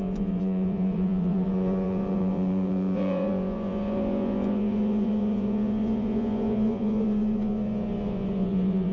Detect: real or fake fake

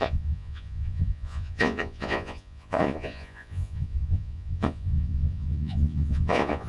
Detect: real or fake fake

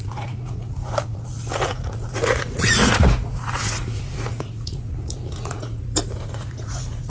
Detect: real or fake fake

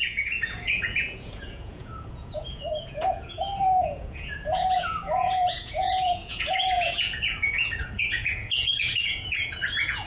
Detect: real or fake fake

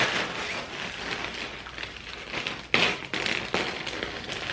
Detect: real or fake real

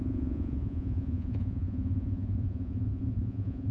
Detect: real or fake fake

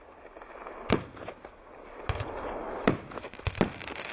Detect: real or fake real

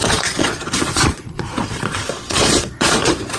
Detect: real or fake fake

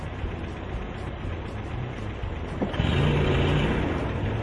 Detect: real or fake real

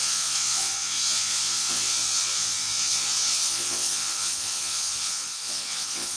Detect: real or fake fake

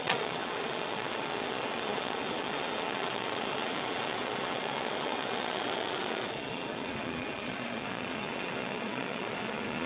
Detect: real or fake fake